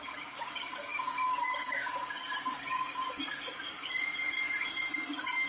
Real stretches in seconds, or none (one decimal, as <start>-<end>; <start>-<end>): none